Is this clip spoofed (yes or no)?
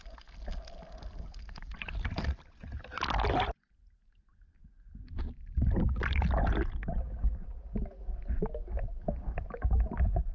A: no